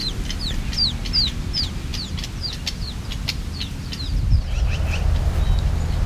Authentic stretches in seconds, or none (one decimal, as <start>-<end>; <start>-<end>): 0.0-6.1